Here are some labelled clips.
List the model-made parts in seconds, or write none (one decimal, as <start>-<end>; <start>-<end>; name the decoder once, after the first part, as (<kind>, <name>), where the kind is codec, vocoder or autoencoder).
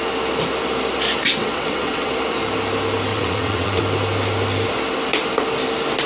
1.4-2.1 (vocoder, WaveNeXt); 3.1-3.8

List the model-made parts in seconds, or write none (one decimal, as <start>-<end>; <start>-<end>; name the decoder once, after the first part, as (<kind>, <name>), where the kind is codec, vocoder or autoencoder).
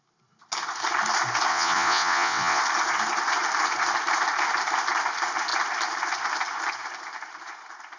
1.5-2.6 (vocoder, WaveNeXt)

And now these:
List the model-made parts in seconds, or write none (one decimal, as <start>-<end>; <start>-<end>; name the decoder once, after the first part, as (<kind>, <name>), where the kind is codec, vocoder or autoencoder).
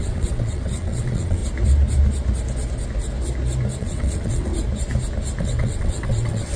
0.0-1.4 (vocoder, WaveNeXt); 3.8-4.5; 5.4-6.6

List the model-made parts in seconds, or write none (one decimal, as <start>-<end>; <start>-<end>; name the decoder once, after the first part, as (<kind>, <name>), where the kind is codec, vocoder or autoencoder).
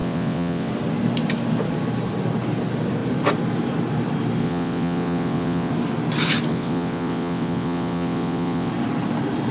0.0-0.7 (vocoder, WaveNeXt); 4.4-5.7; 6.5-8.7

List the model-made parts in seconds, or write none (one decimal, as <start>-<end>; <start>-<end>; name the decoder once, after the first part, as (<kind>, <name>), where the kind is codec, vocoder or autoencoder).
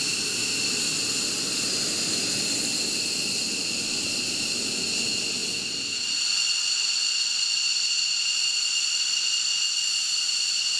none